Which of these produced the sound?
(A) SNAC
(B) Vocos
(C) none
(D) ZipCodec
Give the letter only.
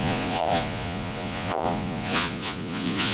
B